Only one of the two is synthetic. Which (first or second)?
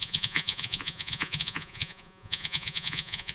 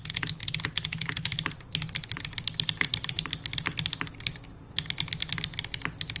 first